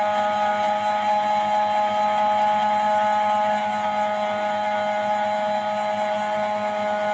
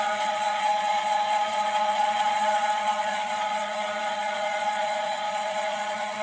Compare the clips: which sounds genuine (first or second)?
first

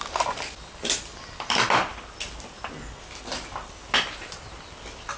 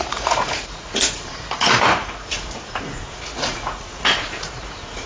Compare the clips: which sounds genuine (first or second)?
first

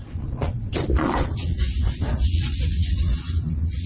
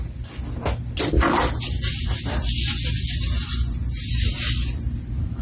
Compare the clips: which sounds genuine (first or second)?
second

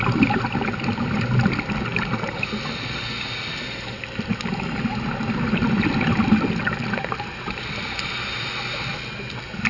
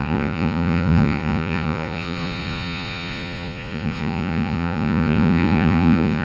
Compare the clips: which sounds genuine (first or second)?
first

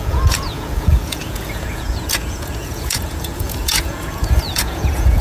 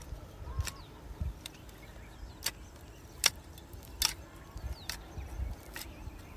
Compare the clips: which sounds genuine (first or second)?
second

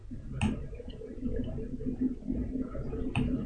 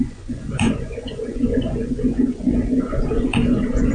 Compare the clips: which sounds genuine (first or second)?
first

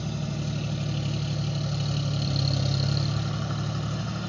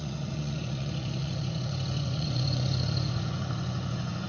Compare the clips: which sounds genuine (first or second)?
first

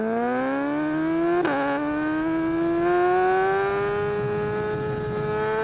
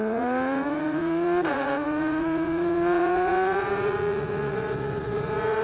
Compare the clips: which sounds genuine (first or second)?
first